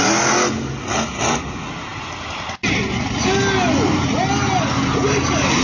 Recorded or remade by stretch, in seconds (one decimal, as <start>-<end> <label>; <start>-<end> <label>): 0.0-5.6 recorded